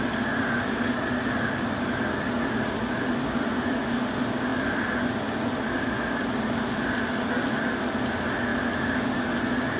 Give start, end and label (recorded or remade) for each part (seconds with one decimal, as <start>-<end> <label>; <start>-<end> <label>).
0.0-9.8 recorded

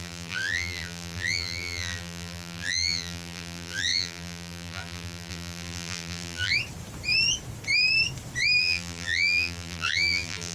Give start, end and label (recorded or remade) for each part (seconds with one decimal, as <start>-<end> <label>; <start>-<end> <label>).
0.0-6.5 remade; 6.5-8.6 recorded; 8.6-10.5 remade

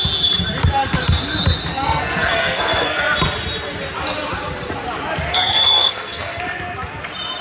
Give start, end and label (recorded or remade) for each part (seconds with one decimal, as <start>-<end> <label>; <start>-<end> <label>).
0.0-1.7 recorded; 1.7-3.0 remade; 3.0-5.3 recorded; 5.3-6.4 remade; 6.4-7.4 recorded